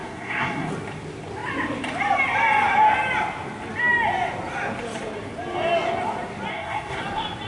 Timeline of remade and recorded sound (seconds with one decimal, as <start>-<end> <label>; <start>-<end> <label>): 0.0-0.7 remade; 0.7-6.5 recorded; 6.5-7.0 remade; 7.0-7.5 recorded